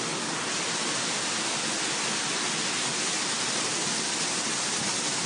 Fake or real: real